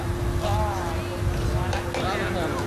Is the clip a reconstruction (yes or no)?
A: no